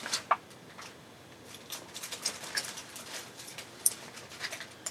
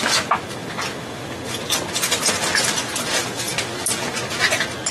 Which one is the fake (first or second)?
first